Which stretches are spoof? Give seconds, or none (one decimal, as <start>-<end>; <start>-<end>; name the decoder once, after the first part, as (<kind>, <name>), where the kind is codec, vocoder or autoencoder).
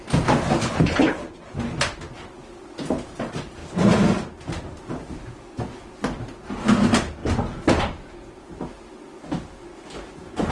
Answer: 0.6-1.1 (codec, HILCodec)